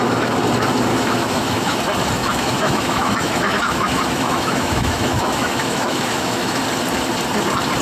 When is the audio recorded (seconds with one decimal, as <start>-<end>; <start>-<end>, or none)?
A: 0.0-0.9; 1.8-2.2; 6.6-7.8